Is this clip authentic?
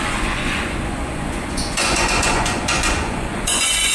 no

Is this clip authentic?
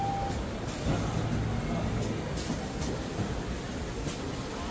yes